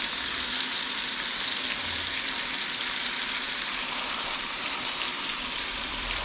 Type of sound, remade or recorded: remade